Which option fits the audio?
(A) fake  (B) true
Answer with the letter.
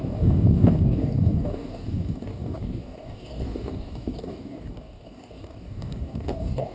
A